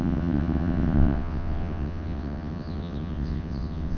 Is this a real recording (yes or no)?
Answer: no